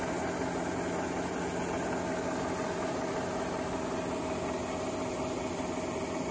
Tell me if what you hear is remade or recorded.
recorded